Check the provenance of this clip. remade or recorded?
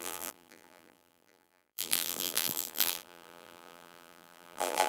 remade